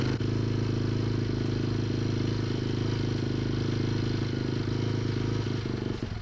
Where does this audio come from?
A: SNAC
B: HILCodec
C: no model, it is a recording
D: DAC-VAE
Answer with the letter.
C